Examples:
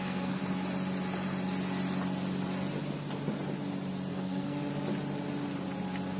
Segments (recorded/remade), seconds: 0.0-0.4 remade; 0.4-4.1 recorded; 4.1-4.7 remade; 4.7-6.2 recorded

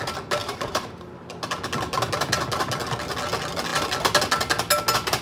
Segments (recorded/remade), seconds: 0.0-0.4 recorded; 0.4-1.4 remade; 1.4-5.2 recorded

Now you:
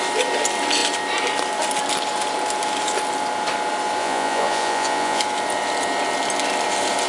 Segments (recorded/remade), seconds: 0.0-4.0 recorded; 4.0-5.2 remade; 5.2-7.1 recorded

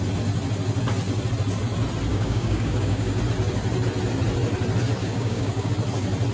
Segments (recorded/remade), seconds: 0.0-2.1 recorded; 2.1-3.2 remade; 3.2-5.0 recorded; 5.0-5.7 remade; 5.7-6.3 recorded

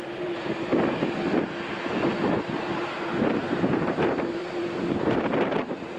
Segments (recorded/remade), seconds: 0.0-0.7 remade; 0.7-2.5 recorded; 2.5-3.1 remade; 3.1-3.6 recorded; 3.6-6.0 remade

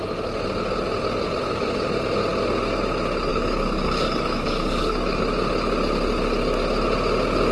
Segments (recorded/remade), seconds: 0.0-3.3 recorded; 3.3-5.2 remade; 5.2-7.5 recorded

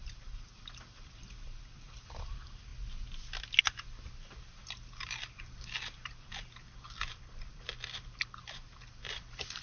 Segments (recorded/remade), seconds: 0.0-2.7 remade; 2.7-3.6 recorded; 3.6-9.6 remade

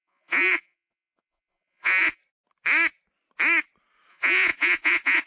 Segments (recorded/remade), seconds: 0.0-2.2 remade; 2.2-4.1 recorded; 4.1-5.3 remade